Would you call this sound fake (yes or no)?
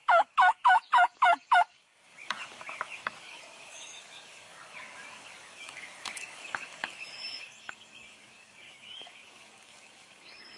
yes